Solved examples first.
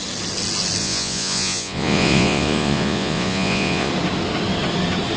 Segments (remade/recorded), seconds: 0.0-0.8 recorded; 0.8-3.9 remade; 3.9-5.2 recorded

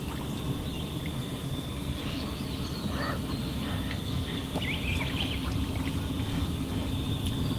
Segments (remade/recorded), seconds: 0.0-1.1 recorded; 1.1-2.4 remade; 2.4-3.4 recorded; 3.4-4.6 remade; 4.6-6.3 recorded; 6.3-6.9 remade; 6.9-7.6 recorded

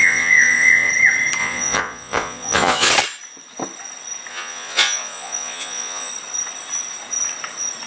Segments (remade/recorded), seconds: 0.0-0.9 remade; 0.9-1.4 recorded; 1.4-2.9 remade; 2.9-4.3 recorded; 4.3-6.1 remade; 6.1-7.9 recorded

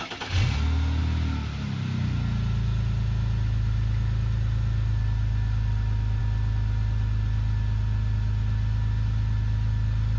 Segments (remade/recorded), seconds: 0.0-10.2 recorded

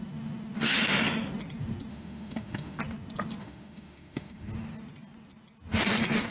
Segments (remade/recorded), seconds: 0.0-1.9 recorded; 1.9-2.8 remade; 2.8-3.4 recorded; 3.4-4.5 remade; 4.5-6.3 recorded

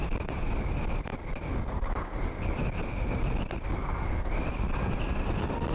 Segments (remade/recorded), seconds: 0.0-5.7 recorded

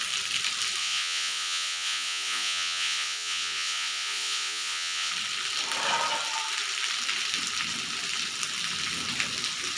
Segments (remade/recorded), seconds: 0.0-0.8 recorded; 0.8-5.1 remade; 5.1-9.8 recorded